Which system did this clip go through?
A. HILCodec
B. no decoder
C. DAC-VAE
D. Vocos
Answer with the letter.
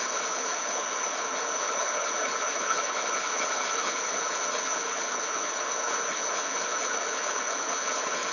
A